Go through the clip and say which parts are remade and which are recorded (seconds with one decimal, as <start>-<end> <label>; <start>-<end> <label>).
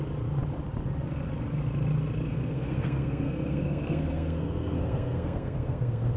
0.0-2.3 recorded; 2.3-6.2 remade